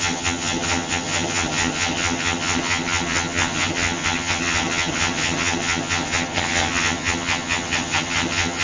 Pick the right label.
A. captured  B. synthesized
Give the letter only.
B